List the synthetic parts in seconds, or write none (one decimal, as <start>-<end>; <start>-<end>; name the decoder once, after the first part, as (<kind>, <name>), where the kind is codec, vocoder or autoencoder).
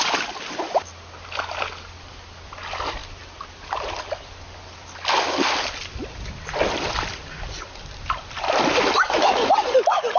none